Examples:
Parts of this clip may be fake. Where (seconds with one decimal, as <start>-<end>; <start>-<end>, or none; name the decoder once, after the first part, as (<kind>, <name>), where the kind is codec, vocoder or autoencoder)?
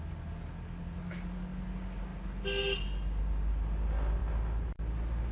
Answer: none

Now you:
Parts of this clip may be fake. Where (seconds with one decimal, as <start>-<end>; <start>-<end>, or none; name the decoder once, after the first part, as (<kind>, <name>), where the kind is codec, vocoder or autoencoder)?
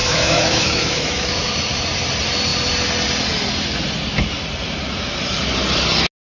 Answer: 0.0-1.6 (autoencoder, DAC-VAE)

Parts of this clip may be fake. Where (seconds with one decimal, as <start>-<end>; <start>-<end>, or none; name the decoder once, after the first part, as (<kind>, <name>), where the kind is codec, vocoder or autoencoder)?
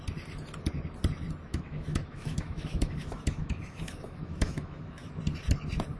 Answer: 1.5-5.1 (autoencoder, DAC-VAE)